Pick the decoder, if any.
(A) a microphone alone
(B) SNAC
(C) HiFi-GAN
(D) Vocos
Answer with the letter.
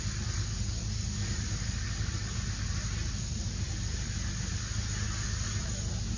A